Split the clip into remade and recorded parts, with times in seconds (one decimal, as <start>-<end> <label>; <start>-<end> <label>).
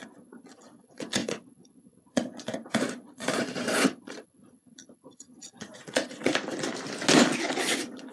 0.0-6.3 remade; 6.3-7.6 recorded; 7.6-8.1 remade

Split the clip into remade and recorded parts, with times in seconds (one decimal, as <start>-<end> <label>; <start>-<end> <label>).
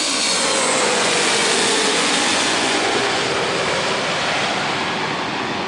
0.0-3.2 remade; 3.2-5.0 recorded; 5.0-5.7 remade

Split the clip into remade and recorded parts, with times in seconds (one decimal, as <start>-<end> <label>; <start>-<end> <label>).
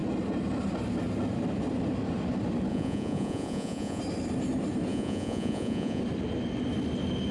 0.0-2.7 recorded; 2.7-4.0 remade; 4.0-4.9 recorded; 4.9-6.0 remade; 6.0-7.3 recorded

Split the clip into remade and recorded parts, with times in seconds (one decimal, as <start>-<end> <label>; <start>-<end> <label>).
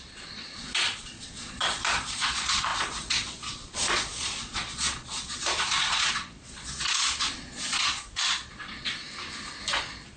0.0-9.0 remade; 9.0-9.7 recorded; 9.7-10.2 remade